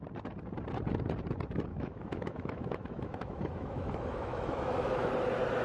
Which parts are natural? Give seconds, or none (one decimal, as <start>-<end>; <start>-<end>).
0.0-1.7; 5.1-5.6